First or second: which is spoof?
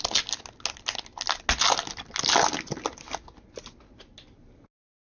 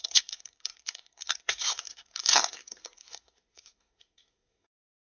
second